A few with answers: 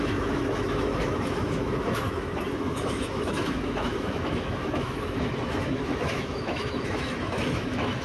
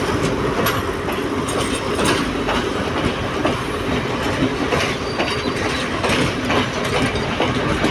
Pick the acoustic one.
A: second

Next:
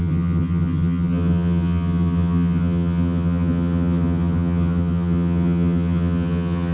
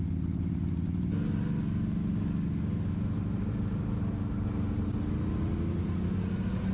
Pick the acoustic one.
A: second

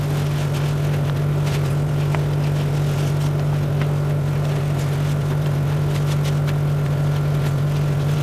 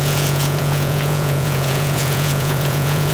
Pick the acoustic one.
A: first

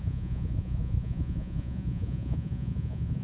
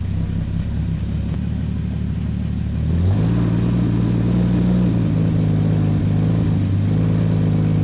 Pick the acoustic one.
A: second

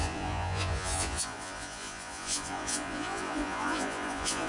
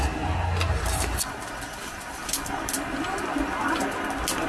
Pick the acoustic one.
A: second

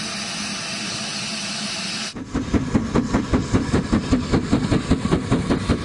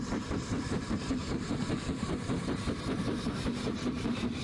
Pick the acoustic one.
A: first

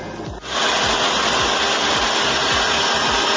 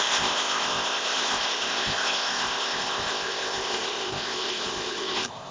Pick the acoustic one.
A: first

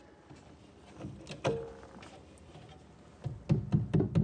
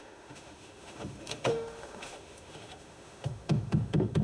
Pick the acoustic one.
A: first